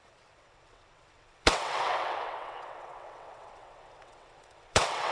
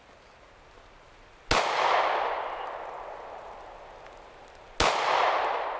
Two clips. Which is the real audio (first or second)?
second